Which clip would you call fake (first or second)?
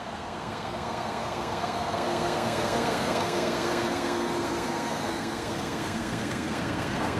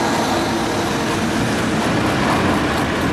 first